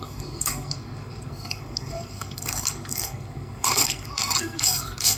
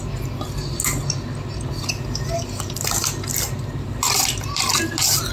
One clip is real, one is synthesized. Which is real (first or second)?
second